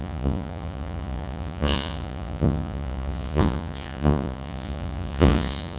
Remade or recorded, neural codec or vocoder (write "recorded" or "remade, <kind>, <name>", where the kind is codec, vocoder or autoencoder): remade, vocoder, Vocos